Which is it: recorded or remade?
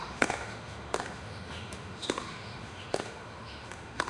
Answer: remade